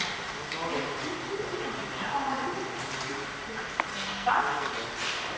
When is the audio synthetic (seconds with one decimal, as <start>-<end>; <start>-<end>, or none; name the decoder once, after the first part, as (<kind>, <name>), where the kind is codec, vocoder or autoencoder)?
3.9-4.7 (codec, SNAC)